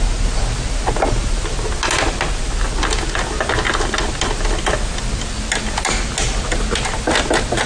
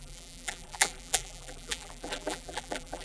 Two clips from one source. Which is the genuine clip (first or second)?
first